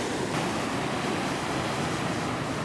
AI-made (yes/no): yes